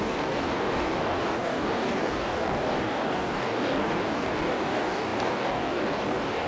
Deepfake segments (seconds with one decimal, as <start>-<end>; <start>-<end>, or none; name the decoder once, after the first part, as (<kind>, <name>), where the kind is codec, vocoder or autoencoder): 0.0-6.5 (codec, DAC)